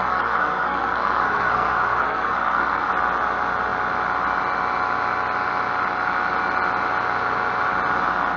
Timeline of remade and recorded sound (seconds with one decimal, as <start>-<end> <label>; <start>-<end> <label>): 0.0-2.9 remade; 2.9-8.4 recorded